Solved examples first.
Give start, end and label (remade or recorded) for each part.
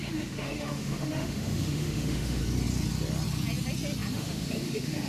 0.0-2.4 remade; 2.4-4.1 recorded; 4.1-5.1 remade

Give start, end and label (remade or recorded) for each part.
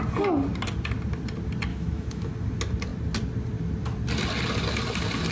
0.0-1.7 recorded; 1.7-2.3 remade; 2.3-5.3 recorded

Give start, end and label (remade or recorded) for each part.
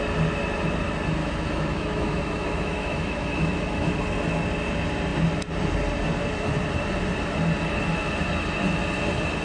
0.0-1.2 recorded; 1.2-3.9 remade; 3.9-9.4 recorded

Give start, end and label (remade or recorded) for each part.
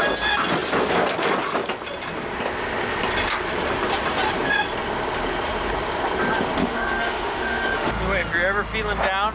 0.0-6.6 recorded; 6.6-7.9 remade; 7.9-9.3 recorded